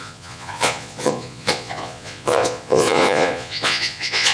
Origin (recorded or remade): remade